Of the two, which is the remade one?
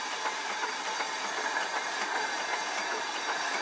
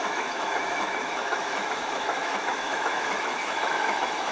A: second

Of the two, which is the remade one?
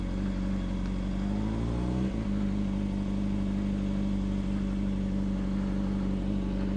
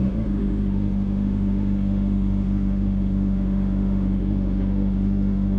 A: second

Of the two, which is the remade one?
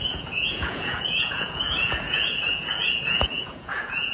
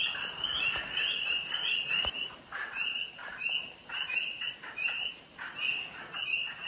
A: first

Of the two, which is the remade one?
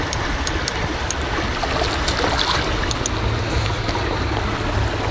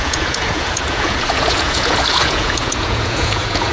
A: second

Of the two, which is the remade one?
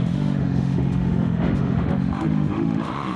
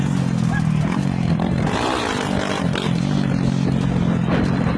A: first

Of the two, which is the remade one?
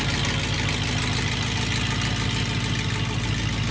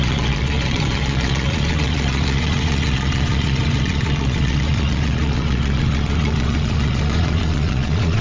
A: second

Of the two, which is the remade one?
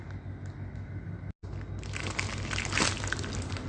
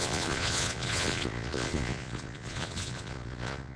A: second